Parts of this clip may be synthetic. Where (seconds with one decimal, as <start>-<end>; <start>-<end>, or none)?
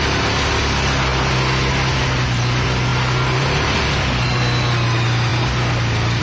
none